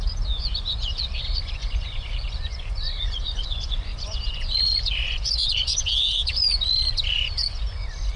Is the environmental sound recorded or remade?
remade